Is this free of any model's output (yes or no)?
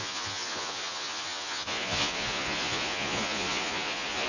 no